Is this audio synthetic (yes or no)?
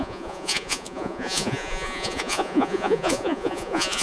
yes